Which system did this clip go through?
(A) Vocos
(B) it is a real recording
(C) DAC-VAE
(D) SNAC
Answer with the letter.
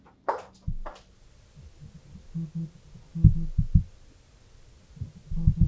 B